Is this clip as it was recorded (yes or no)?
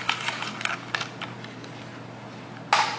yes